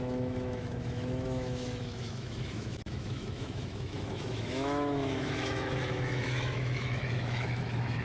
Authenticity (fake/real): fake